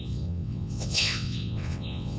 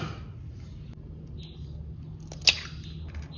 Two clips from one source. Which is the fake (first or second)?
first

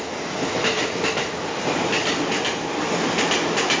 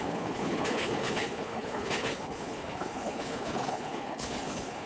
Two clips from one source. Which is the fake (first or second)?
second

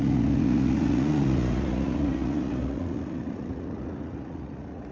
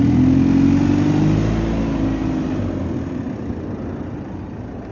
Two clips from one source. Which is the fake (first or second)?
first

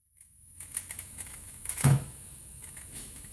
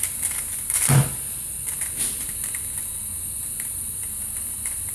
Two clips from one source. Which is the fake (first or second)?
first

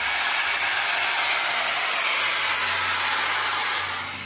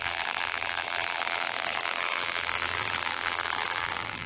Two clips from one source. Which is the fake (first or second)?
second